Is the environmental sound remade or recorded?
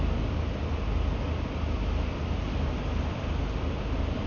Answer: recorded